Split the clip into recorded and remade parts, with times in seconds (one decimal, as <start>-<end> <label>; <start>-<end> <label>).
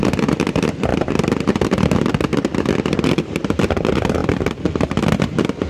0.0-5.7 remade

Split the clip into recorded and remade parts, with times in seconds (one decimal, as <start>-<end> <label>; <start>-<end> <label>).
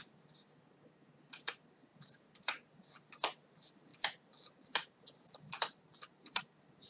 0.0-1.9 recorded; 1.9-2.9 remade; 2.9-3.9 recorded; 3.9-6.4 remade; 6.4-6.9 recorded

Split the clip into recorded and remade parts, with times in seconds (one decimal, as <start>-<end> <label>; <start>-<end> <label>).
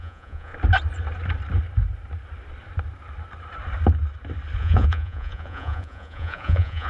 0.0-0.5 remade; 0.5-4.6 recorded; 4.6-6.9 remade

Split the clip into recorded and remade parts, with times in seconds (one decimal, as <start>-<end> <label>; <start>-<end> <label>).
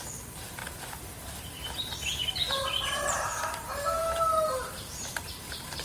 0.0-0.6 remade; 0.6-2.3 recorded; 2.3-5.8 remade